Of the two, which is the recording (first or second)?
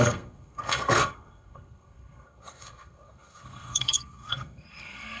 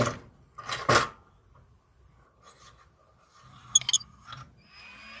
second